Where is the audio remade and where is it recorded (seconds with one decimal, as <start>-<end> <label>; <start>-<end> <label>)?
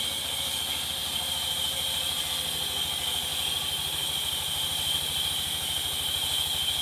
0.0-1.0 recorded; 1.0-2.3 remade; 2.3-3.3 recorded; 3.3-5.3 remade; 5.3-6.8 recorded